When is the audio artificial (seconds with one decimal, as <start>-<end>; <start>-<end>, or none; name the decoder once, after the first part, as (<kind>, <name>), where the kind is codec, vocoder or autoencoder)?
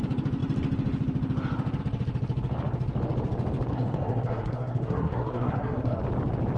3.7-6.0 (codec, SNAC)